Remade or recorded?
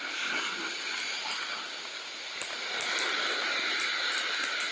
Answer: recorded